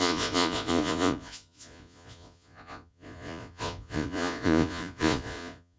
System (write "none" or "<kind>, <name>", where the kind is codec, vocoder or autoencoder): vocoder, Vocos